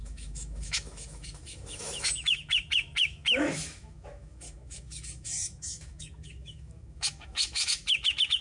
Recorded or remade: remade